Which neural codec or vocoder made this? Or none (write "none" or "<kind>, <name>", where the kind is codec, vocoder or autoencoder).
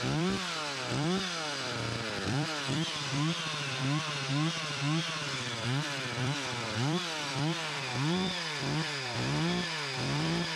vocoder, BigVGAN v2